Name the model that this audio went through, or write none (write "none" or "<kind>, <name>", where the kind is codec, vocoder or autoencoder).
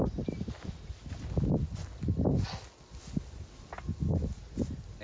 none